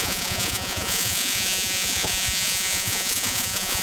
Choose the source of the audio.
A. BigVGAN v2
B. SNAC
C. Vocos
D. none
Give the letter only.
C